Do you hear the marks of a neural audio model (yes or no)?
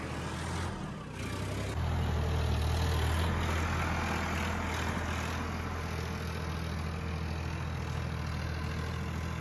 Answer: no